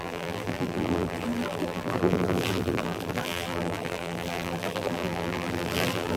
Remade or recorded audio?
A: remade